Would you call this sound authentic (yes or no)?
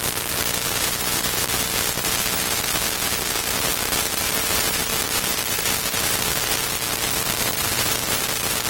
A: no